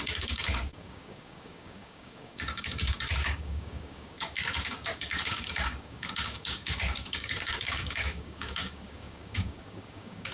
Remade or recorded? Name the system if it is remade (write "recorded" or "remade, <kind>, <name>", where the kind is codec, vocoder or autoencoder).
remade, codec, DAC